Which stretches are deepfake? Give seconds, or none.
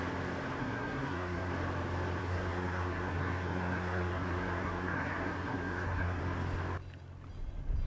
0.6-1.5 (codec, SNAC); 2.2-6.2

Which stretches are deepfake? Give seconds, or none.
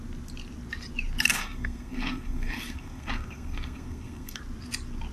1.3-4.4 (codec, SNAC)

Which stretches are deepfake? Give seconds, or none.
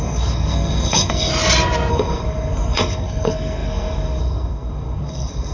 0.0-1.3 (codec, SNAC); 1.9-5.5